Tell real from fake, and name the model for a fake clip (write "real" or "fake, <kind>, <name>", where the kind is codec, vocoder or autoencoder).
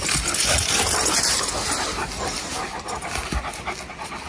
real